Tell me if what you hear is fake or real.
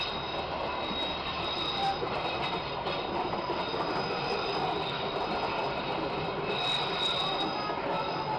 real